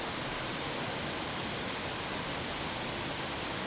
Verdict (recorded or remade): recorded